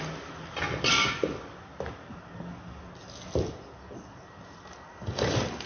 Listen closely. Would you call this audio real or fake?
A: real